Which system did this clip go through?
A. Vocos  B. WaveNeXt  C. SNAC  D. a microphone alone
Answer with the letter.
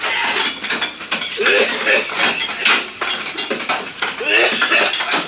D